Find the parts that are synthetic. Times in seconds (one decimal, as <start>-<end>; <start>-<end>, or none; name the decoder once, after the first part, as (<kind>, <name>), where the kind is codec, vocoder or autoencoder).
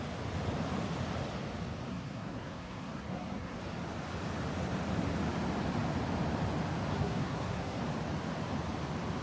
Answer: 1.9-3.6 (codec, SNAC); 6.9-7.8